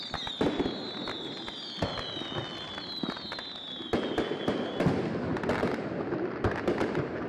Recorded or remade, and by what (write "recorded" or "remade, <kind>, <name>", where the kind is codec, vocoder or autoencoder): recorded